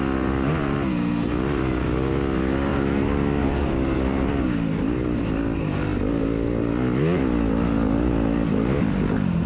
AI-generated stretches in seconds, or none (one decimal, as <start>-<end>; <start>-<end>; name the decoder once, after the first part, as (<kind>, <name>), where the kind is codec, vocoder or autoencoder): none